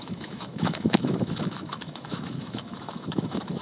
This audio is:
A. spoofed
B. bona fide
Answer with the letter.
A